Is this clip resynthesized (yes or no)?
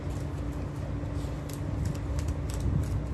no